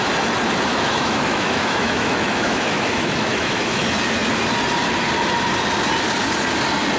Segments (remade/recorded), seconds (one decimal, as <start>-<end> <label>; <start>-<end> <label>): 0.0-0.7 recorded; 0.7-3.8 remade; 3.8-7.0 recorded